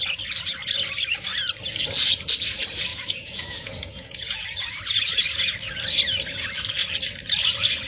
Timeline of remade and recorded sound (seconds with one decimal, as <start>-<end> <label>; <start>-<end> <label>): 0.0-2.9 recorded; 2.9-4.8 remade; 4.8-7.9 recorded